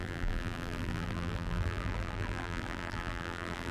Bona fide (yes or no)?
no